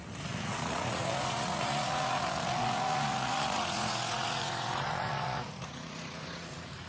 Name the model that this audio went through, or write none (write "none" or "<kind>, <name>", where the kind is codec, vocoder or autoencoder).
vocoder, Vocos